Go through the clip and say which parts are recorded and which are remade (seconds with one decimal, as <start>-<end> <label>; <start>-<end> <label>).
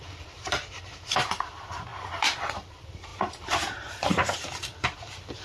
0.0-1.9 remade; 1.9-2.5 recorded; 2.5-5.4 remade